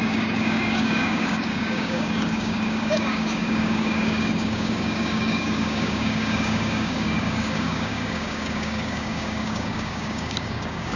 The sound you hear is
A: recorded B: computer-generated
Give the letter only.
B